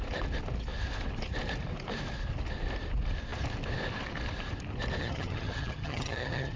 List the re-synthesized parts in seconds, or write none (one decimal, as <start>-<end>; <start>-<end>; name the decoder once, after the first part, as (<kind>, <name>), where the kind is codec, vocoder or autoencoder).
5.0-6.6 (vocoder, HiFi-GAN)

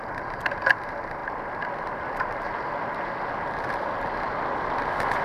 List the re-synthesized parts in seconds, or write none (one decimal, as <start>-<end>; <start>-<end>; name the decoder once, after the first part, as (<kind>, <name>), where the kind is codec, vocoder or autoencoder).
none

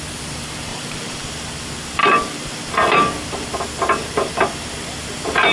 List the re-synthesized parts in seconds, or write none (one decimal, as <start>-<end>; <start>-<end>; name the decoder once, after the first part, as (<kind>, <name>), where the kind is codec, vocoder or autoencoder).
0.7-1.3 (vocoder, BigVGAN v2); 2.0-2.7

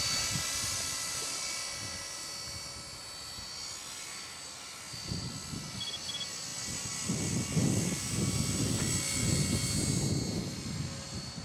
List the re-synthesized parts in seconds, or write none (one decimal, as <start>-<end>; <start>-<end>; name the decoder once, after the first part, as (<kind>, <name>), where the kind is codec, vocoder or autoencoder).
none

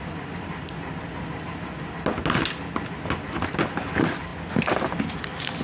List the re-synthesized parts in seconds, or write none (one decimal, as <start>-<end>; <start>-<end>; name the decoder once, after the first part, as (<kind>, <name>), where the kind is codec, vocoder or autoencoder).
none

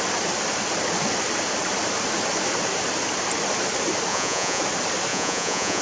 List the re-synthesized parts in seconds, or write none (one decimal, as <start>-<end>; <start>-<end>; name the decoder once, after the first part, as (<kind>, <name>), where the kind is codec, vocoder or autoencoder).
4.1-4.6 (vocoder, Vocos); 5.1-5.8